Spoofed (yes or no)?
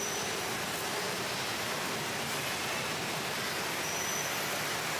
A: no